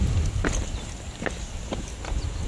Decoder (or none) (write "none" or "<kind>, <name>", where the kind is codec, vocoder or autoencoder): none